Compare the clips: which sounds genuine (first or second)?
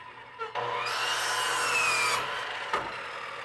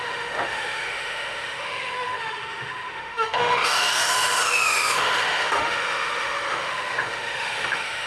first